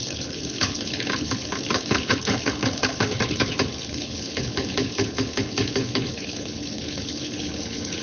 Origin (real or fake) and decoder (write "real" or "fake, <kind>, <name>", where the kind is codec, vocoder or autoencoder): fake, codec, HILCodec